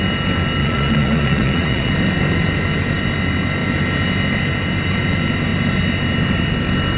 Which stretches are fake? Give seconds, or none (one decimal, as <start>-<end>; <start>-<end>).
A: 0.6-1.9